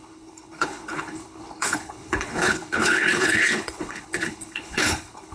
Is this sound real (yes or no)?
no